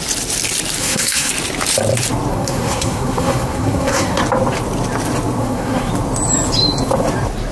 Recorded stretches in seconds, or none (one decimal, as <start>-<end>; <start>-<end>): 0.0-0.8; 1.3-2.3; 4.2-5.4; 5.9-7.5